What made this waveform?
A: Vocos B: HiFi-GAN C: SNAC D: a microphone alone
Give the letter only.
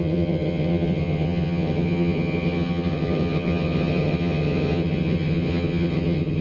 B